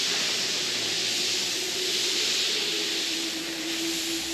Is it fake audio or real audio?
real